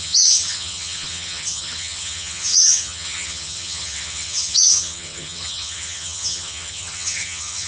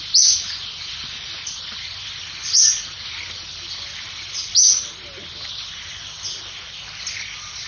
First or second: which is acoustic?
second